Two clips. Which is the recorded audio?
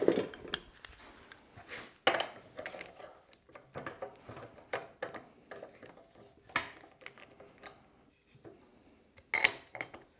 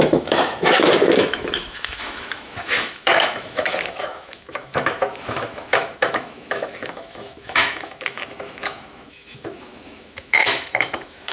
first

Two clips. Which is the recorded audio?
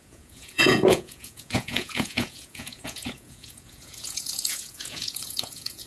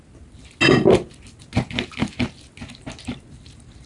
second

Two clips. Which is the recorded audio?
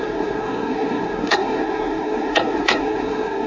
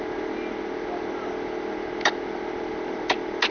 second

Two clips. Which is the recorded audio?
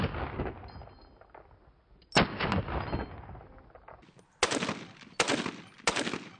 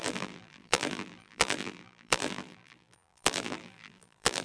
first